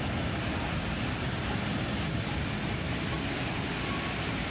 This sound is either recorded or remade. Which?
recorded